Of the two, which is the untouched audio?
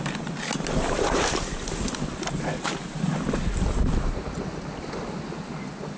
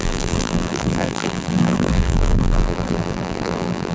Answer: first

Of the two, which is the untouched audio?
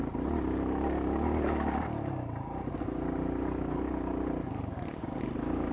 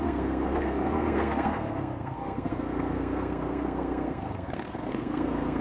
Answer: first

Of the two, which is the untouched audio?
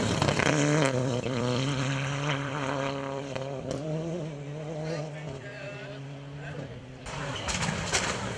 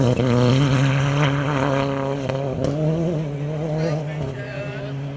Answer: second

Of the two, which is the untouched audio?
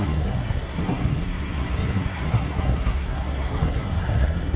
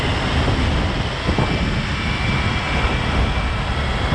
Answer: second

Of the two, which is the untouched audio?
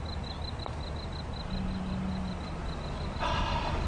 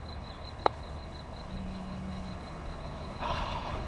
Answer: first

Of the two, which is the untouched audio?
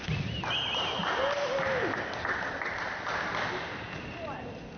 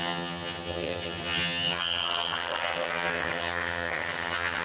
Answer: first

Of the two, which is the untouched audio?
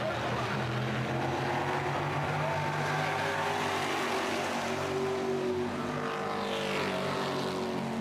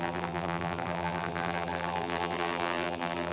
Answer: first